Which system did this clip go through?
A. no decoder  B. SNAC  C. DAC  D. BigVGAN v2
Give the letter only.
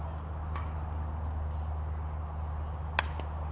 A